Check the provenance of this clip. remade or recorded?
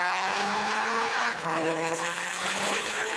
remade